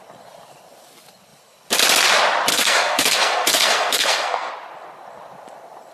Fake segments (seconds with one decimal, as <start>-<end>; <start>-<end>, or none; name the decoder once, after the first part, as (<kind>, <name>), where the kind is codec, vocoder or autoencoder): 2.5-4.5 (codec, SNAC)